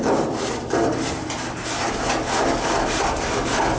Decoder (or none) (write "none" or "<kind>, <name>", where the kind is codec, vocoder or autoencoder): none